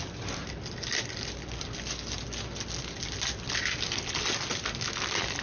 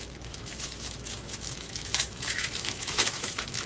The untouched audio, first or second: first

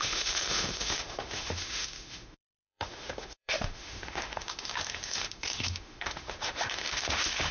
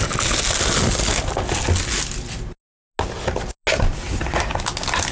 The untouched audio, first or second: second